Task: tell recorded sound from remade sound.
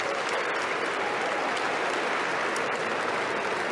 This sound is recorded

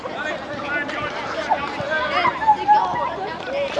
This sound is recorded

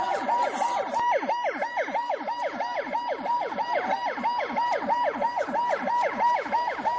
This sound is recorded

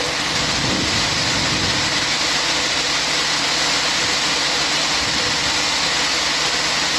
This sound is recorded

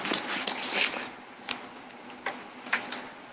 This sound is recorded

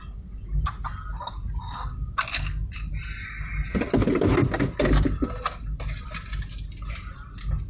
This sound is recorded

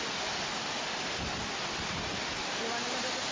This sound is recorded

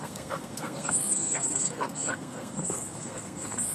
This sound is remade